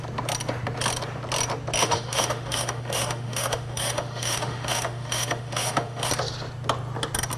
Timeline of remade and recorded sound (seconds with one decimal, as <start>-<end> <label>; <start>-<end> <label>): 0.0-1.8 recorded; 1.8-6.1 remade; 6.1-7.4 recorded

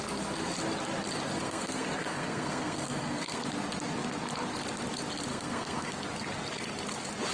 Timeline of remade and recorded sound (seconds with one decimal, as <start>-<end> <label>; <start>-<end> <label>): 0.0-1.4 recorded; 1.4-3.4 remade; 3.4-5.3 recorded; 5.3-5.9 remade; 5.9-7.3 recorded

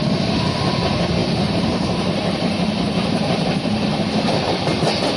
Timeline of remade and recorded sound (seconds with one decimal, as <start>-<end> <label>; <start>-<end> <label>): 0.0-1.2 recorded; 1.2-4.0 remade; 4.0-5.2 recorded

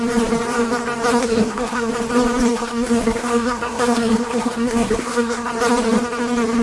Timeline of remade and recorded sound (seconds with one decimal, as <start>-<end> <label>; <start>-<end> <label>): 0.0-1.2 recorded; 1.2-1.9 remade; 1.9-2.5 recorded; 2.5-5.5 remade; 5.5-6.6 recorded